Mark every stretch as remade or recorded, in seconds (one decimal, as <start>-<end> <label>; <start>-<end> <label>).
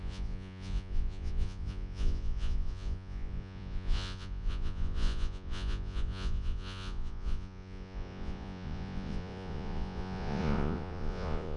0.0-11.6 remade